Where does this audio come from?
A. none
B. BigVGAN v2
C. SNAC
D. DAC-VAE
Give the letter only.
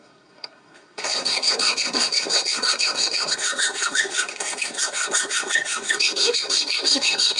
C